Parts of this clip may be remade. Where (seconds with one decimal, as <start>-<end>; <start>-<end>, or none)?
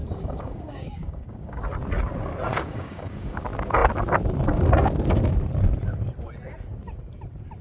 0.0-1.6; 2.5-3.4